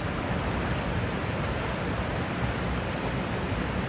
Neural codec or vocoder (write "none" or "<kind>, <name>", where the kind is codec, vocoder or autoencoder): none